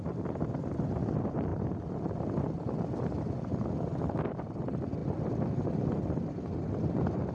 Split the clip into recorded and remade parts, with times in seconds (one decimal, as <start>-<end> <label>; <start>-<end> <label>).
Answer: 0.0-7.3 recorded